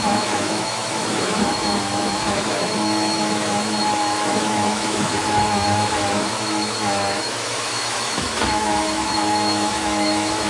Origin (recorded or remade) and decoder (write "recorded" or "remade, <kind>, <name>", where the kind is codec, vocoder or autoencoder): remade, autoencoder, DAC-VAE